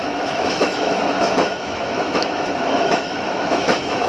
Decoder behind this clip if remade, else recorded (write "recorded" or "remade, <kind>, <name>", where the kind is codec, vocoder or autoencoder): remade, autoencoder, DAC-VAE